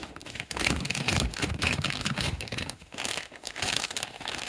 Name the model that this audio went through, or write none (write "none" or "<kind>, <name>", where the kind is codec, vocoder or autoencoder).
autoencoder, DAC-VAE